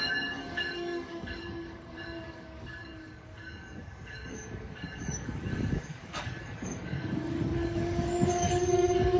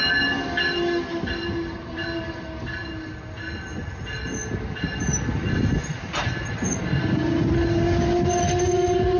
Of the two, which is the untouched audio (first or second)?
second